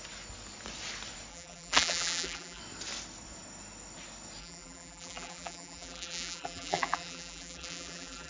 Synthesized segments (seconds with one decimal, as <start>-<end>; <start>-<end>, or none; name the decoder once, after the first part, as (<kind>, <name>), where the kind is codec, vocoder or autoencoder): 1.3-2.6 (vocoder, BigVGAN v2); 4.4-8.3

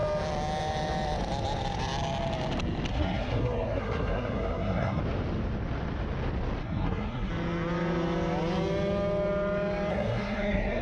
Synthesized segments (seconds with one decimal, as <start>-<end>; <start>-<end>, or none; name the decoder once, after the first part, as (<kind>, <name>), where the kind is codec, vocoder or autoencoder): 2.9-5.0 (codec, SNAC); 6.6-7.3; 9.9-10.8